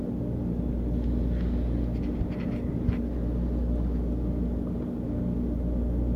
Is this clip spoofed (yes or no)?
no